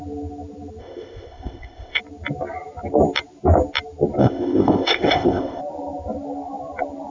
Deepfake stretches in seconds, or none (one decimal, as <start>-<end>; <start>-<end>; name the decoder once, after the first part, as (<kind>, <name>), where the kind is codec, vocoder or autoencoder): 0.8-2.0 (codec, ZipCodec); 4.2-5.6